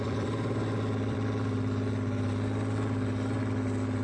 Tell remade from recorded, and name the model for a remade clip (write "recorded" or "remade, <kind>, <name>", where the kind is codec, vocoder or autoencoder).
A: remade, vocoder, BigVGAN v2